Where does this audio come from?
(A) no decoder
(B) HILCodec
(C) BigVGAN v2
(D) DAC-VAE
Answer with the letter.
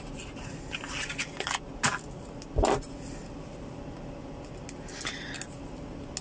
A